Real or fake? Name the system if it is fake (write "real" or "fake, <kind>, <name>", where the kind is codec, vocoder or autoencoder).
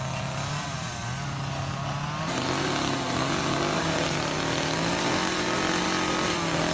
real